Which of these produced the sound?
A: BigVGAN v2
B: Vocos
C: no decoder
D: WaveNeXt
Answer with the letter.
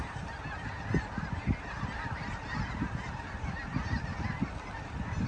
C